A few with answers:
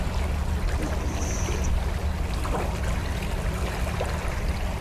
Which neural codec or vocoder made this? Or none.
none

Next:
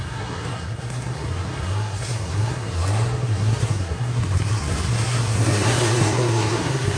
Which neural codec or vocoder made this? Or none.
codec, SNAC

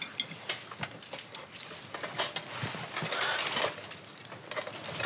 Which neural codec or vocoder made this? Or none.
none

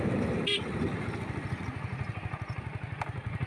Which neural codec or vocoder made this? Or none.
none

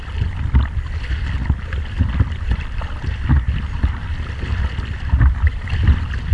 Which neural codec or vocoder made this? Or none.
none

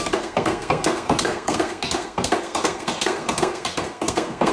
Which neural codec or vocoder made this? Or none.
codec, SNAC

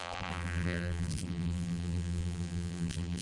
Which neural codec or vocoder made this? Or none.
vocoder, BigVGAN v2